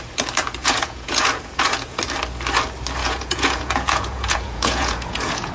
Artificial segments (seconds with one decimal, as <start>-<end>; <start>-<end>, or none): 0.6-2.0; 3.0-5.5